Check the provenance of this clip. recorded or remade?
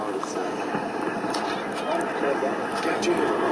recorded